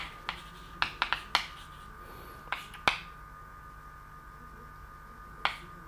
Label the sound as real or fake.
real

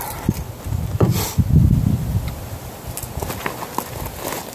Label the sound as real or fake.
real